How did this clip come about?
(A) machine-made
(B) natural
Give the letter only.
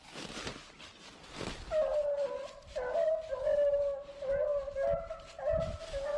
B